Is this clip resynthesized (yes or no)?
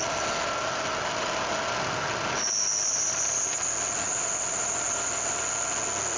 no